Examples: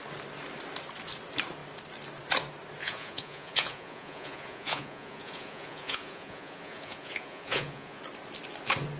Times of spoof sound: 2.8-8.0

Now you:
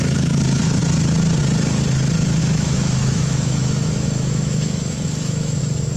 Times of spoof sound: 2.4-5.6

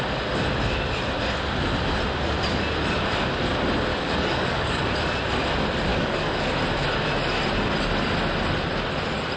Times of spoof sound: 3.9-4.8; 5.9-6.5

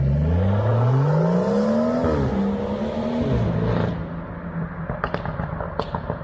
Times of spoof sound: none